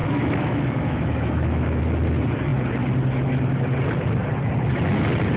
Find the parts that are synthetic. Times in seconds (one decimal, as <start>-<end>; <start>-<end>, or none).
0.0-1.8